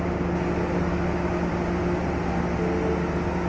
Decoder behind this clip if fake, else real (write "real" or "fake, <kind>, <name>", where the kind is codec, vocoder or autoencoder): real